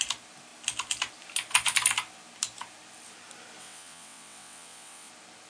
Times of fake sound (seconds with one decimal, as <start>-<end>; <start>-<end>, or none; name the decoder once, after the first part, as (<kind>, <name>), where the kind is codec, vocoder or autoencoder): 3.6-5.1 (vocoder, WaveNeXt)